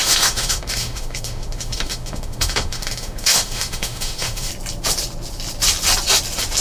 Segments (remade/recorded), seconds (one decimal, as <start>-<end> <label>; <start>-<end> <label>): 0.0-4.5 remade; 4.5-6.6 recorded